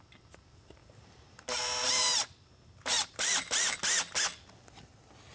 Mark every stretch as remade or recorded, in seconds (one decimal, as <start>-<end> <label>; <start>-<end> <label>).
0.0-3.8 remade; 3.8-5.3 recorded